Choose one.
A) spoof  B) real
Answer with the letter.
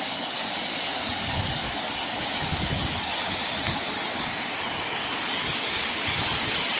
A